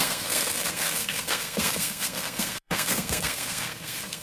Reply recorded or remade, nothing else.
remade